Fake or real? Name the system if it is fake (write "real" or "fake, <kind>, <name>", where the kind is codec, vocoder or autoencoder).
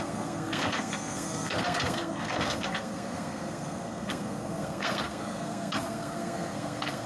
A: fake, codec, SNAC